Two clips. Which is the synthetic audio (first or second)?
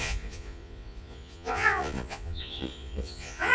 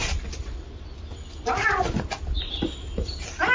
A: first